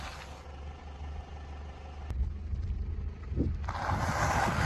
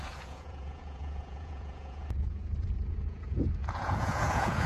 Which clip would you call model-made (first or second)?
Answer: second